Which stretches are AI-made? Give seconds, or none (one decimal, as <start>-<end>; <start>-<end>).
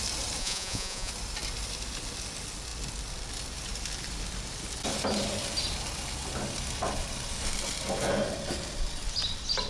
0.4-1.1